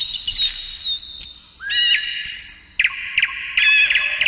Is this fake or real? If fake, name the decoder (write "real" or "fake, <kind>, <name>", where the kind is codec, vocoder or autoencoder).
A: real